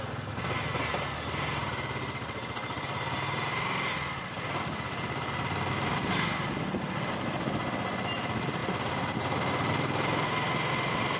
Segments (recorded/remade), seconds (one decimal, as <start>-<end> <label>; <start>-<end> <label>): 0.0-11.2 recorded